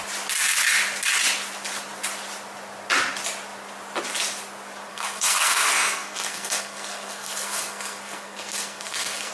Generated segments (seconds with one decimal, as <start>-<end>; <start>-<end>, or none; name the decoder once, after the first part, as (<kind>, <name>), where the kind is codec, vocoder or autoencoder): 4.9-9.3 (codec, SNAC)